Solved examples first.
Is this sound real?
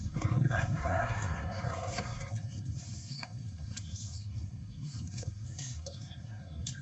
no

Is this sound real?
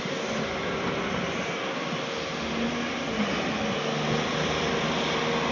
yes